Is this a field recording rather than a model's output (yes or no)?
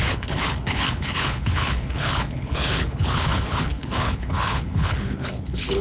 no